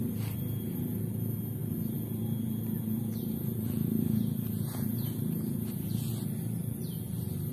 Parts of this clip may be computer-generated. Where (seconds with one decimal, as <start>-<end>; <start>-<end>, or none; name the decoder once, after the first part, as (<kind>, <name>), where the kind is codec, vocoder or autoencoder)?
1.6-6.1 (vocoder, Vocos)